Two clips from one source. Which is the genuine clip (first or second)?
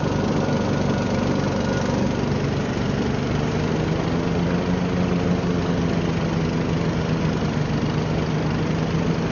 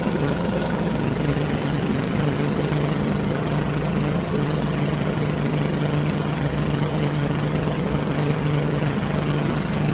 first